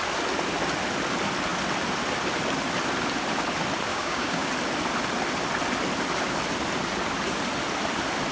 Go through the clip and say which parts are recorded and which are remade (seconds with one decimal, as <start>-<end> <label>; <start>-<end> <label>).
0.0-3.9 recorded; 3.9-4.5 remade; 4.5-8.3 recorded